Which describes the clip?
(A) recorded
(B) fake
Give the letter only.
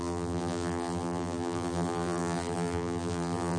B